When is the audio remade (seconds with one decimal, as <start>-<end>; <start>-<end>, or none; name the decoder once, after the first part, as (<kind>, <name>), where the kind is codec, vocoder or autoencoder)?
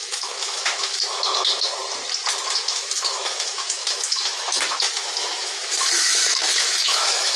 0.0-1.8 (autoencoder, DAC-VAE); 2.4-7.4